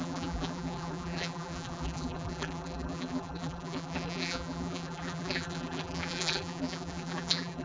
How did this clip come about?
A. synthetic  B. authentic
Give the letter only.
A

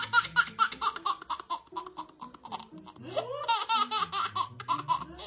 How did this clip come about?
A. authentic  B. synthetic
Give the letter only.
A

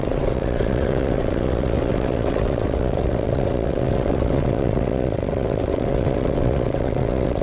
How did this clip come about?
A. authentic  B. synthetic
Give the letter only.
B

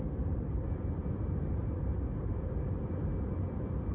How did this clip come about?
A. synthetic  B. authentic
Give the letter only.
B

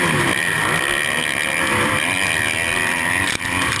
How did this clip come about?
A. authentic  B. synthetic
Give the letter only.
A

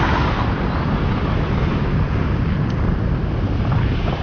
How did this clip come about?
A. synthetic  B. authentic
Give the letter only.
B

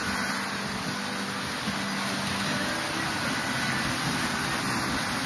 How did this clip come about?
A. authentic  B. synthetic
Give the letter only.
A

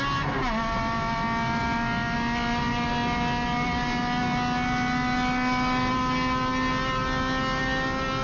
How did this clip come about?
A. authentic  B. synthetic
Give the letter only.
A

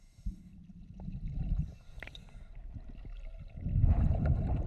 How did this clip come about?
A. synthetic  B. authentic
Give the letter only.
B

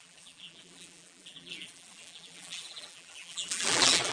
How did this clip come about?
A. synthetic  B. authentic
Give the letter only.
A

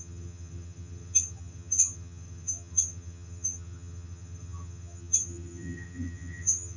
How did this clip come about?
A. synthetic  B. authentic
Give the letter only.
A